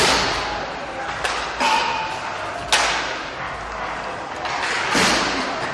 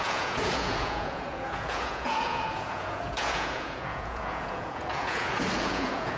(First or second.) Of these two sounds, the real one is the first